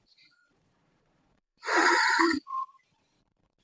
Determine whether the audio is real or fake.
fake